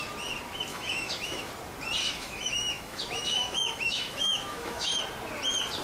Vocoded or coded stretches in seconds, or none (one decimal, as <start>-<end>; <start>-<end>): 0.7-1.5; 2.0-5.0